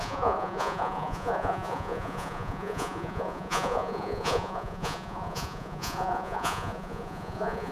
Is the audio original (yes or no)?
no